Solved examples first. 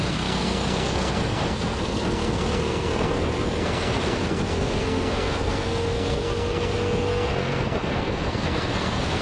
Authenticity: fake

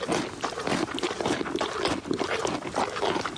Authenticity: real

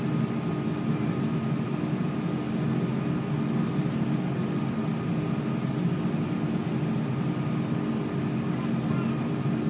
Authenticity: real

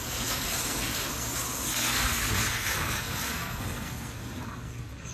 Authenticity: fake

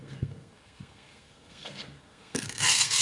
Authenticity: fake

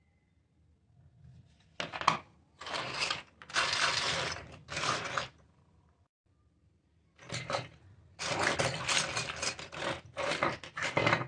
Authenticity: real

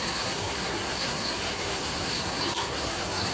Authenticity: fake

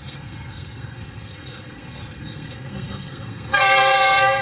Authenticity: fake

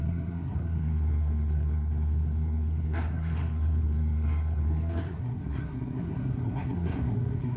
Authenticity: fake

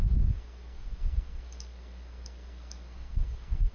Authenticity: fake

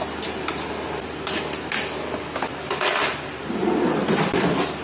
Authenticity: real